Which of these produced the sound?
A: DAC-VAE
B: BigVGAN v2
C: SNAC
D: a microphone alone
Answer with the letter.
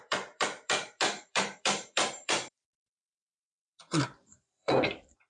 B